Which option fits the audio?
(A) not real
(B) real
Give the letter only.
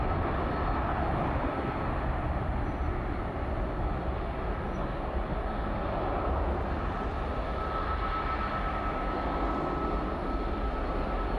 B